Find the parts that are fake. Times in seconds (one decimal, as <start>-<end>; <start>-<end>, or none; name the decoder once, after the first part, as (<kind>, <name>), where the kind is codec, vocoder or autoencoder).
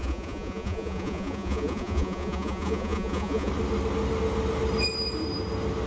0.0-3.5 (vocoder, Vocos)